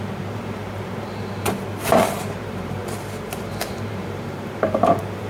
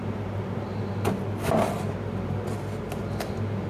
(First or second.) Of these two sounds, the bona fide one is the second